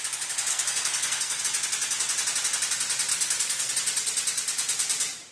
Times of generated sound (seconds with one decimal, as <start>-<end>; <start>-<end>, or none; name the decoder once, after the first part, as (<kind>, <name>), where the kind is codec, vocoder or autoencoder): 0.5-1.4 (codec, SNAC); 3.1-3.7